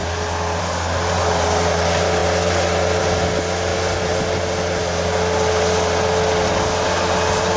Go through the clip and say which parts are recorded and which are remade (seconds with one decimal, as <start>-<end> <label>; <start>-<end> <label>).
0.0-7.6 recorded